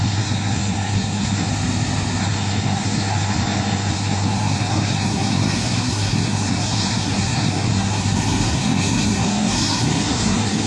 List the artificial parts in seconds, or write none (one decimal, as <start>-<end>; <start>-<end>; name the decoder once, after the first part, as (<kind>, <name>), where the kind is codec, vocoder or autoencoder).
0.0-1.5 (codec, SNAC); 2.2-10.7